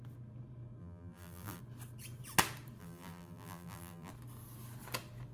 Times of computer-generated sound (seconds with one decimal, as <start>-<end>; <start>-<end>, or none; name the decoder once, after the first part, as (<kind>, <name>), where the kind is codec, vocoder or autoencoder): 0.8-1.6 (vocoder, BigVGAN v2); 2.8-4.1